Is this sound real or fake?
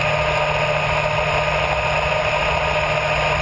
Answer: real